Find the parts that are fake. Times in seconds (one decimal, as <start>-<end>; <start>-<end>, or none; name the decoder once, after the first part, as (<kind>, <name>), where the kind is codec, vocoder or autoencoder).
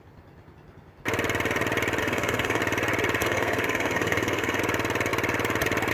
2.0-2.6 (codec, SNAC); 3.2-4.6